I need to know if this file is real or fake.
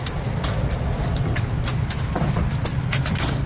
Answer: real